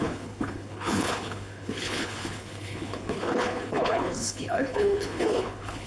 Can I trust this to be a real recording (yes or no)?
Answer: no